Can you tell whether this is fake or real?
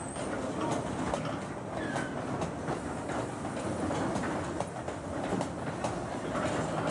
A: real